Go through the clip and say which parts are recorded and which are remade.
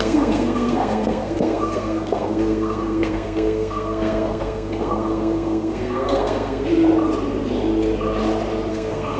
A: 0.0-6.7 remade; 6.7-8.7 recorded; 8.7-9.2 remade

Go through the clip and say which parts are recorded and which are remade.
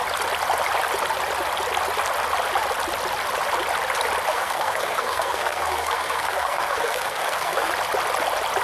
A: 0.0-4.3 recorded; 4.3-7.7 remade; 7.7-8.6 recorded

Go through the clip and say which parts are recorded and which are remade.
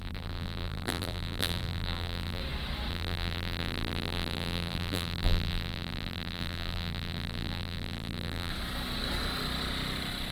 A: 0.0-2.4 remade; 2.4-2.9 recorded; 2.9-8.5 remade; 8.5-10.3 recorded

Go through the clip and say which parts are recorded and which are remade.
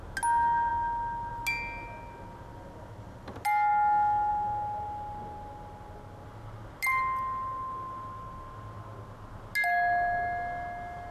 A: 0.0-11.1 recorded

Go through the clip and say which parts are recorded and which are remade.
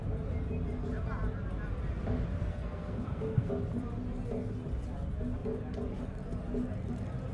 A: 0.0-2.5 recorded; 2.5-3.5 remade; 3.5-7.3 recorded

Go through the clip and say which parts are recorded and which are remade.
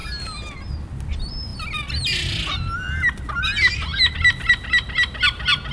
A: 0.0-5.7 recorded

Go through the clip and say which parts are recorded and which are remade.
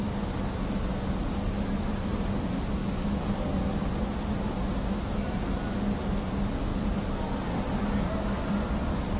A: 0.0-2.8 recorded; 2.8-3.4 remade; 3.4-6.7 recorded; 6.7-9.2 remade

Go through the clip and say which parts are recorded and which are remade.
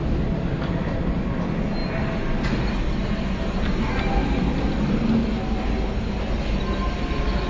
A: 0.0-7.5 recorded